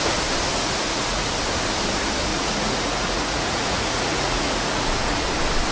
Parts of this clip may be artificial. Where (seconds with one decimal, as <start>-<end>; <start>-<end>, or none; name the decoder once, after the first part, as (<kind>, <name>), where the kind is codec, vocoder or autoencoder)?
0.5-1.3 (vocoder, Vocos); 2.3-5.3

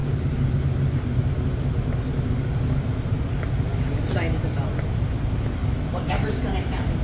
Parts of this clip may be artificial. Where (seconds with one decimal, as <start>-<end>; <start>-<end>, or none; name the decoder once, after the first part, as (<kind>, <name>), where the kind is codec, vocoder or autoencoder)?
none